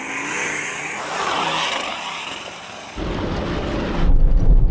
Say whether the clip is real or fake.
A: real